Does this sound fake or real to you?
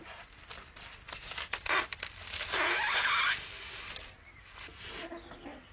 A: real